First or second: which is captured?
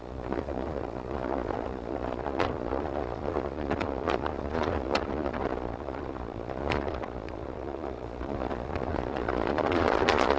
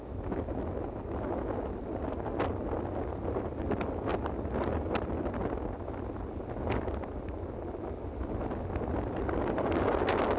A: second